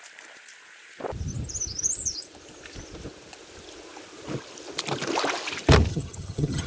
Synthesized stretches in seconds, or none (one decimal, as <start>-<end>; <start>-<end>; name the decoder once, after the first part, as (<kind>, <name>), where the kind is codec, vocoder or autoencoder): 5.9-6.7 (vocoder, HiFi-GAN)